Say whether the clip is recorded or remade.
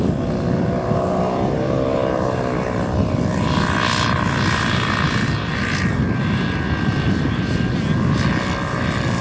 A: recorded